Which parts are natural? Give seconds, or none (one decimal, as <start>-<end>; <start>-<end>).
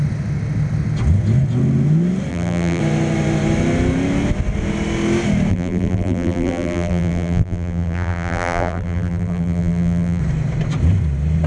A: 0.0-2.3; 2.8-5.5; 10.2-11.5